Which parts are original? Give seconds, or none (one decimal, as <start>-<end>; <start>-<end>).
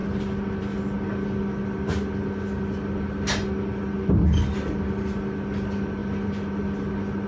0.0-7.3